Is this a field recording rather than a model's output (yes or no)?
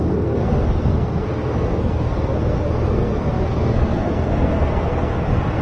no